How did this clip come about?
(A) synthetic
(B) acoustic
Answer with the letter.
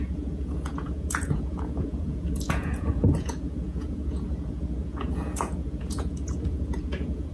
A